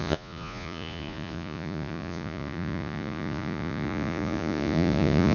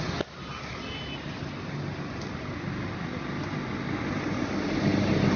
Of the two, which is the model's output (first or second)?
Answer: first